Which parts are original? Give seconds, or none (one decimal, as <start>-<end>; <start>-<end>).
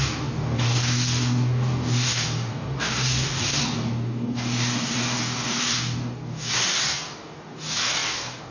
none